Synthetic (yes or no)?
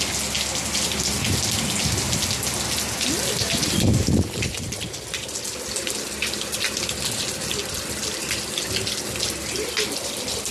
no